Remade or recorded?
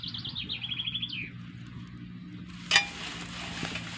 recorded